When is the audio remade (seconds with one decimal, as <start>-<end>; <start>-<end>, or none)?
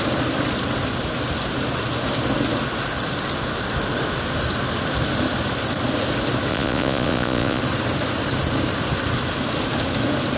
6.5-7.6